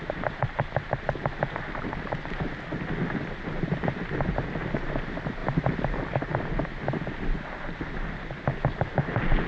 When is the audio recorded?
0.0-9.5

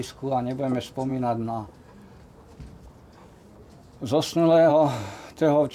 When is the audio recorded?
0.0-5.7

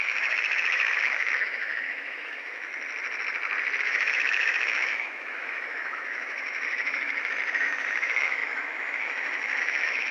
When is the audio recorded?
2.7-3.8

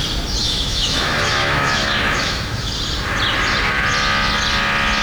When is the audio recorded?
0.0-0.4; 2.7-5.0

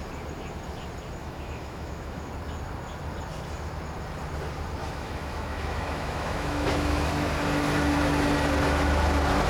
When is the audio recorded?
0.0-1.2; 2.3-4.8; 7.1-9.5

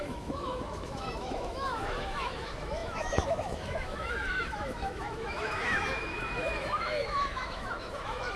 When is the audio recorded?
none

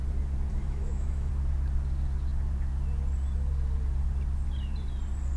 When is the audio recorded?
0.0-0.5; 1.3-5.4

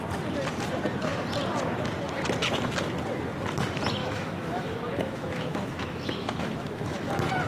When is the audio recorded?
0.0-4.0; 7.1-7.5